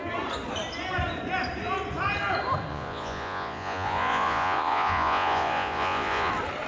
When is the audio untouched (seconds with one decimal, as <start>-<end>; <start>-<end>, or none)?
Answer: 0.0-2.7; 6.3-6.7